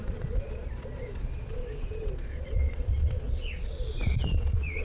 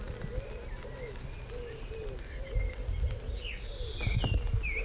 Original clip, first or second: second